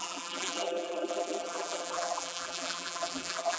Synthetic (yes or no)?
yes